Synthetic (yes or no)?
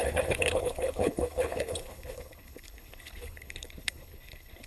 yes